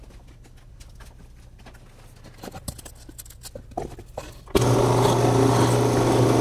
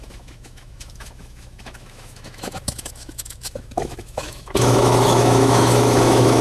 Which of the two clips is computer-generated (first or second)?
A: second